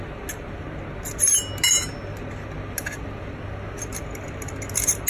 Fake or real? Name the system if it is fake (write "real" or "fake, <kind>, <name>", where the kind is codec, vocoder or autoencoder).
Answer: real